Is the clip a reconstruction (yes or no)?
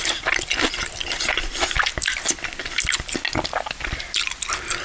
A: no